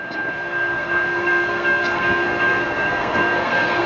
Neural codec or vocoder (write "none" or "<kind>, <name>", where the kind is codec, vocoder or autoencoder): codec, SNAC